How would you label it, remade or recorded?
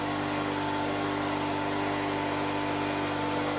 recorded